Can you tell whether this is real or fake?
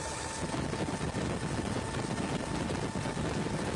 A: real